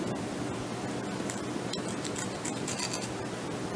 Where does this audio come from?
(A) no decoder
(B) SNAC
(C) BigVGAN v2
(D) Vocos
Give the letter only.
A